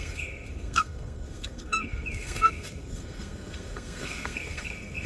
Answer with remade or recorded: remade